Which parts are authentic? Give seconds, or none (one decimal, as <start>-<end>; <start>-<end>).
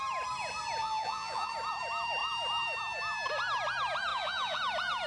0.0-0.8; 1.5-4.1; 4.6-5.1